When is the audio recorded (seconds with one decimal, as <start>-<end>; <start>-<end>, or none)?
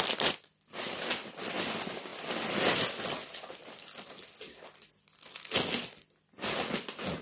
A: 0.0-7.2